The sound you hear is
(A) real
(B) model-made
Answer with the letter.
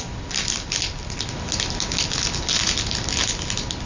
A